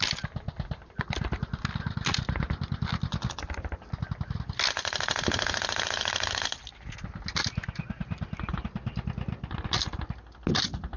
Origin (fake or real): real